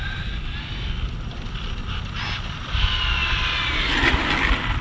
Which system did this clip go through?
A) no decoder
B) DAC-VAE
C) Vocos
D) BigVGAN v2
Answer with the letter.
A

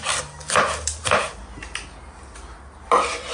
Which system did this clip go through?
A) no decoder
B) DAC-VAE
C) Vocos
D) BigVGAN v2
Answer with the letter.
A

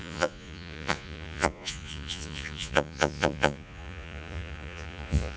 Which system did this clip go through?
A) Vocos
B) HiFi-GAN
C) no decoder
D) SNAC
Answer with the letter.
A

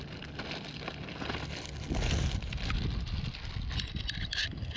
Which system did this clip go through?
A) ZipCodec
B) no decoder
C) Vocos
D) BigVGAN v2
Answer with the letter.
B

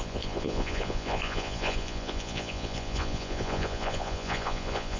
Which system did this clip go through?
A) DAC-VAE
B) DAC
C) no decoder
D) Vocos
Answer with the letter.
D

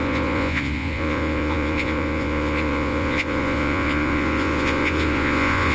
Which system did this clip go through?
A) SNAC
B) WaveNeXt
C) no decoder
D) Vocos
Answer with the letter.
D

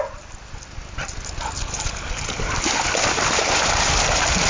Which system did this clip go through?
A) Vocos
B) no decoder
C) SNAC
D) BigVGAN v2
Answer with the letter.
B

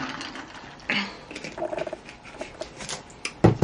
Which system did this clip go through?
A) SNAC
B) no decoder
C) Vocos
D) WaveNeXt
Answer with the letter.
B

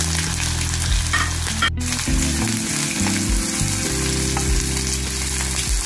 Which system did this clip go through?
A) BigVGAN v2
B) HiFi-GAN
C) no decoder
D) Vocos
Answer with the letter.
C